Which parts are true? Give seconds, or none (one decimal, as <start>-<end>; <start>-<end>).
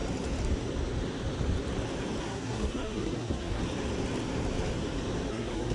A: 0.0-2.2; 3.6-5.3